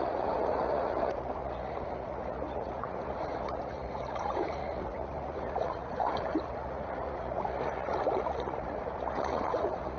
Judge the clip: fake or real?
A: fake